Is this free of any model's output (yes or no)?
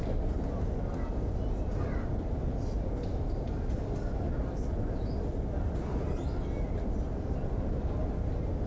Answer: yes